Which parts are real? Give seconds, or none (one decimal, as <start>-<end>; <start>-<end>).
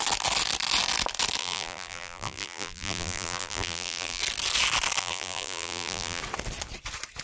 0.0-1.4; 4.2-5.0; 6.2-7.2